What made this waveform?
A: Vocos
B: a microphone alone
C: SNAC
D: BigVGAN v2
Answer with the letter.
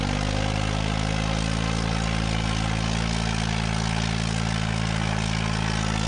B